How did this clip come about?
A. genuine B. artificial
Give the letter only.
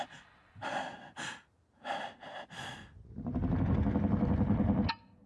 A